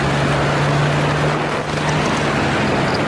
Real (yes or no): yes